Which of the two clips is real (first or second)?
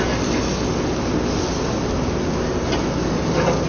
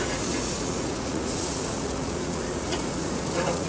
first